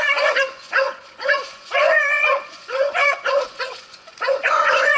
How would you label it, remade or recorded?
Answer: remade